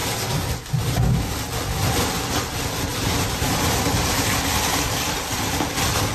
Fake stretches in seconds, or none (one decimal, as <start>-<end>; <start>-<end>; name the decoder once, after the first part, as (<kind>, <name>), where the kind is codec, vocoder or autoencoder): 2.9-4.3 (vocoder, BigVGAN v2)